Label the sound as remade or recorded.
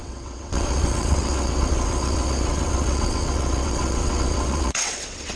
remade